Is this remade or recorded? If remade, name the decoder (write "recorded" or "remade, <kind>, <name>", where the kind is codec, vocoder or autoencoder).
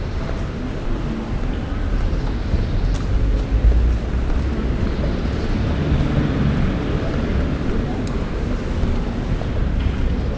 recorded